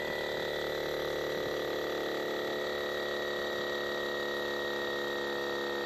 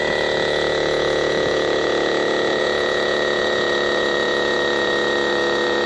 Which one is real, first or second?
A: first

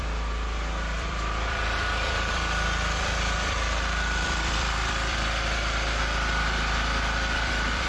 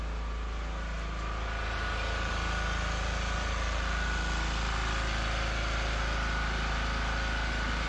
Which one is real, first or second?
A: second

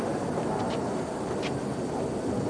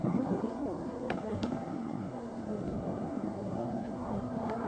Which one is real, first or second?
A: first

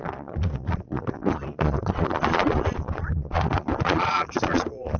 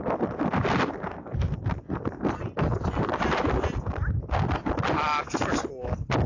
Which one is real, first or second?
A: second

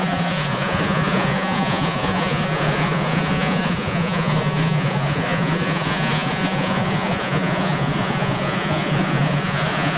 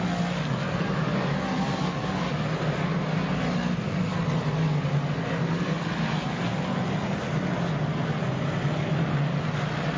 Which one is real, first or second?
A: second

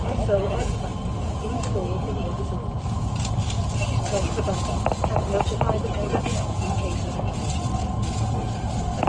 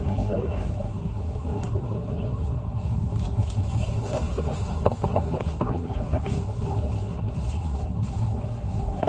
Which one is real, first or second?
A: first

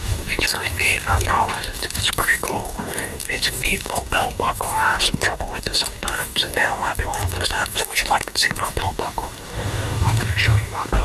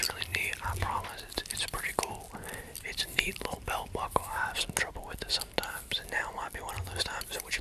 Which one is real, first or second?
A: second